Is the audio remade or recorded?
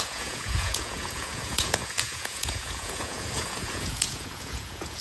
remade